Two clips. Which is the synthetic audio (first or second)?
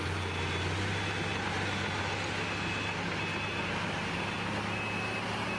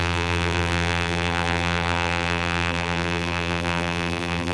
second